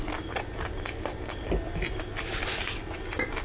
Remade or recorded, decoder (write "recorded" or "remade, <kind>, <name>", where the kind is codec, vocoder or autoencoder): recorded